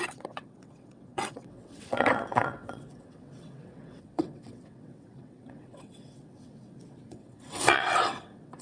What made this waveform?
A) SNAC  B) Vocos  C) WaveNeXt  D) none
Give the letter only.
C